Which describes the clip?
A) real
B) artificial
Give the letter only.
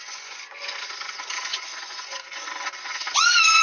B